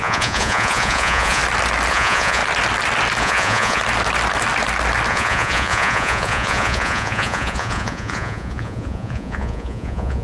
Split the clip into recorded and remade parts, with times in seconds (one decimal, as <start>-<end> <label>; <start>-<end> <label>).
0.0-1.4 remade; 1.4-1.9 recorded; 1.9-2.4 remade; 2.4-3.2 recorded; 3.2-3.8 remade; 3.8-5.1 recorded; 5.1-10.2 remade